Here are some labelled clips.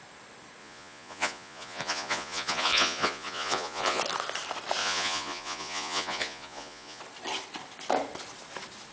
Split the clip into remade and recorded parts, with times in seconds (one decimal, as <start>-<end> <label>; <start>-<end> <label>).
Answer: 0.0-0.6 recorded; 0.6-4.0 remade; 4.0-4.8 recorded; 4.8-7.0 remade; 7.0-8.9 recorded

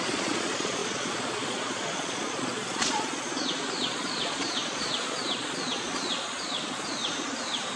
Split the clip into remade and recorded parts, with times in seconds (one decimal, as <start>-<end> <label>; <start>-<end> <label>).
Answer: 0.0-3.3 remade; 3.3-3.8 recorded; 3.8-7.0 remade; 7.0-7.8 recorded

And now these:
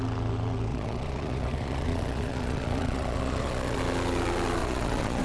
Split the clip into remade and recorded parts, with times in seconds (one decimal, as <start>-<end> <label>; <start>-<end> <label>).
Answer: 0.0-0.7 recorded; 0.7-3.8 remade; 3.8-4.6 recorded; 4.6-5.2 remade

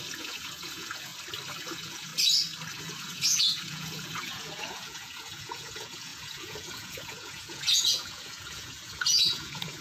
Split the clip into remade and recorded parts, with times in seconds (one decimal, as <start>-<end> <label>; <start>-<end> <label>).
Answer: 0.0-1.1 remade; 1.1-1.6 recorded; 1.6-2.1 remade; 2.1-2.8 recorded; 2.8-9.8 remade

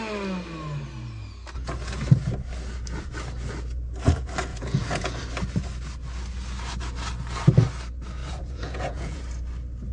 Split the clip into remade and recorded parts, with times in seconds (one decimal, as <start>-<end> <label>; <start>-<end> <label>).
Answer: 0.0-4.5 recorded; 4.5-5.2 remade; 5.2-8.2 recorded; 8.2-9.2 remade; 9.2-9.9 recorded

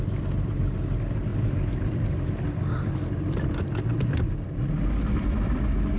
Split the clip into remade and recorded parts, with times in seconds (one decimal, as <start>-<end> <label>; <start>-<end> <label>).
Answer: 0.0-6.0 recorded

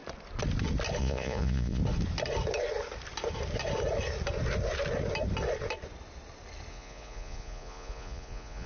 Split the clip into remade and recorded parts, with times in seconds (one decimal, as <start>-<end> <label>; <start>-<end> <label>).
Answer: 0.0-1.0 recorded; 1.0-1.8 remade; 1.8-6.7 recorded; 6.7-8.7 remade

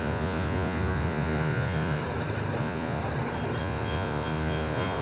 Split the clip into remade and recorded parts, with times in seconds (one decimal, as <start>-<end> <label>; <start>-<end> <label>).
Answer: 0.0-2.0 remade; 2.0-2.6 recorded; 2.6-3.0 remade; 3.0-3.6 recorded; 3.6-5.0 remade